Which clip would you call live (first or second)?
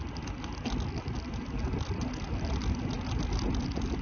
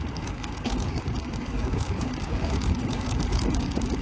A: first